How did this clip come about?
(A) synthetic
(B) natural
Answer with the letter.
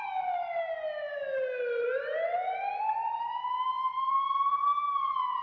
B